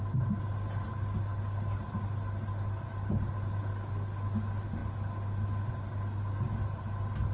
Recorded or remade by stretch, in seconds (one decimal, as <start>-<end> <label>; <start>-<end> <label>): 0.0-7.3 recorded